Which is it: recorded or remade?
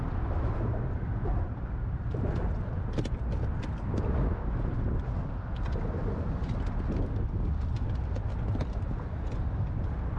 recorded